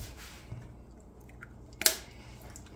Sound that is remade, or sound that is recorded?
recorded